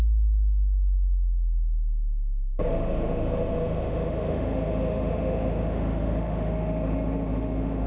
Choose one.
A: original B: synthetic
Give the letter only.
B